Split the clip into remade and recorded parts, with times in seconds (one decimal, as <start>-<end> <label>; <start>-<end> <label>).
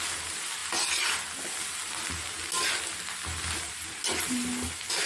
0.0-5.1 recorded